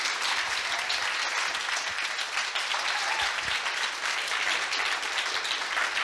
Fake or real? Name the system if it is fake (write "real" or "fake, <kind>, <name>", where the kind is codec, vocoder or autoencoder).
real